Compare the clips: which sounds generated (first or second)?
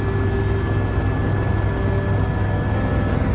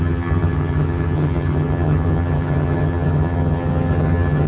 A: second